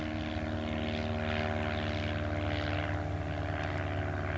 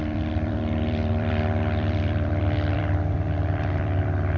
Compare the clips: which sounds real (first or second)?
first